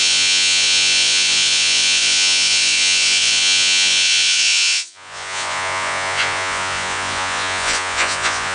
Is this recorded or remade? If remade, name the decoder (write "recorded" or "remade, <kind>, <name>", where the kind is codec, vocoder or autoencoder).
remade, vocoder, Vocos